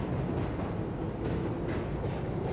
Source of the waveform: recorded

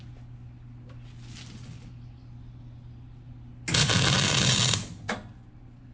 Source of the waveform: recorded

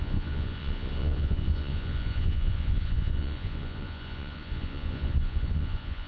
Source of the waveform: remade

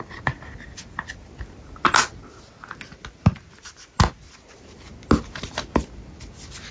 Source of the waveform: recorded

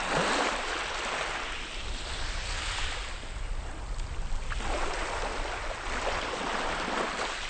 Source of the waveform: recorded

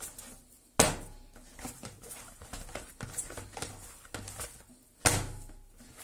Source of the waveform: recorded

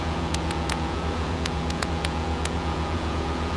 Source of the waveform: remade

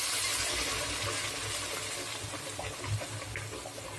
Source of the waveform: recorded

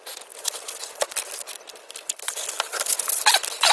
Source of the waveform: recorded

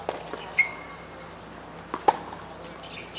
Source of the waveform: recorded